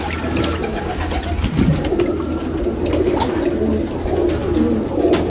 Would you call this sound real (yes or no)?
yes